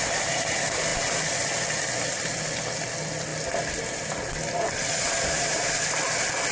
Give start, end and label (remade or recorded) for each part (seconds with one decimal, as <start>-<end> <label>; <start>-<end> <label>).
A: 0.0-6.5 recorded